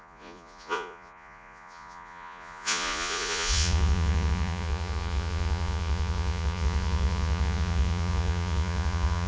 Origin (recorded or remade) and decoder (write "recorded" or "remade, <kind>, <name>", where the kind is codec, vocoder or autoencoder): remade, vocoder, Vocos